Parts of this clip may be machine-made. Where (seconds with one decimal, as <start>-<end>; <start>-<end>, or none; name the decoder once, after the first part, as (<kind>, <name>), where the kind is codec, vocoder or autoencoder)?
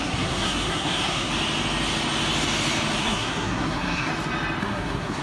0.0-1.3 (codec, SNAC); 3.0-4.1; 4.6-5.2